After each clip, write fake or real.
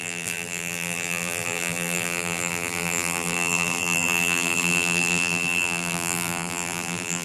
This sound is fake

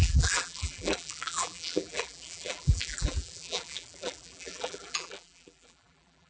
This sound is fake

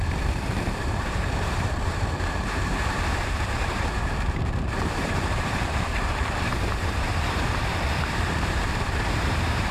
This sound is fake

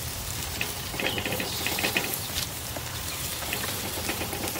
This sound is fake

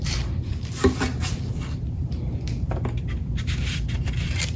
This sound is fake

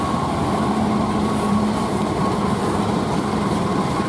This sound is fake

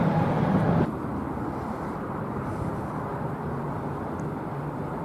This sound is real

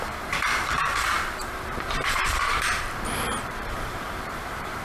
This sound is fake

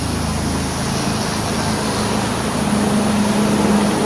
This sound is real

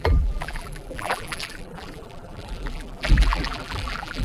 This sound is fake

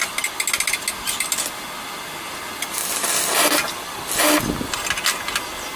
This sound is real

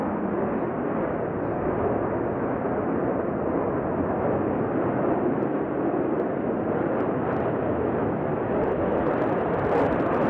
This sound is real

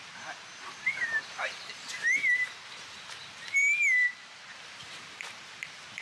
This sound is fake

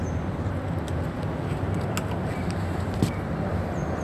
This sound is real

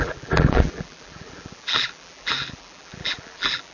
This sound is fake